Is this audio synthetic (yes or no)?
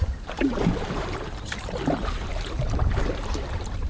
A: yes